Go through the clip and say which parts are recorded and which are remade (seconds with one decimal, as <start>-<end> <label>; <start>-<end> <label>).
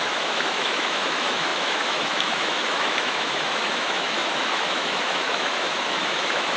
0.0-6.6 remade